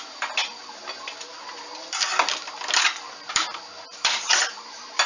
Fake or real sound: real